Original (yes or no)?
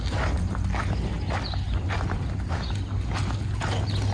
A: yes